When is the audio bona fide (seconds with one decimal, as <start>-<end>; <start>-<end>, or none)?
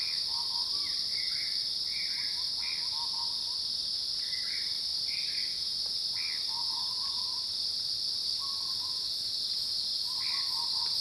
0.0-11.0